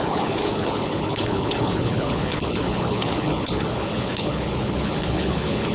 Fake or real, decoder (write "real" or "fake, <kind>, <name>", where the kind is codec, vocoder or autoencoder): fake, codec, HILCodec